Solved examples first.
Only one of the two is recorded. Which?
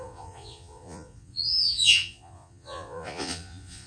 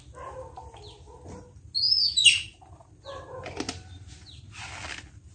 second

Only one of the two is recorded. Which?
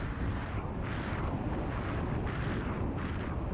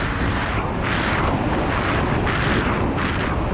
second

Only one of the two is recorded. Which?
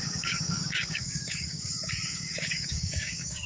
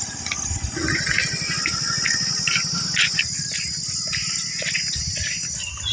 second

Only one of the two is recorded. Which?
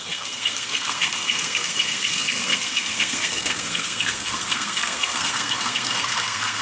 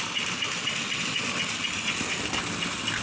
second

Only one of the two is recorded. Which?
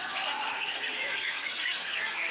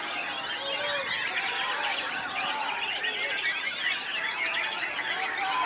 second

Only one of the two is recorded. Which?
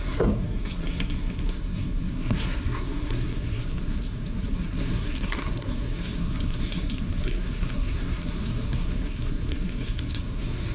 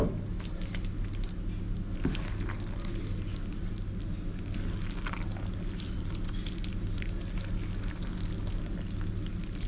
second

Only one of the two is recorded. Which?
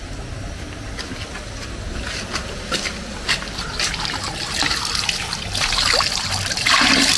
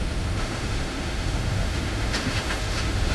first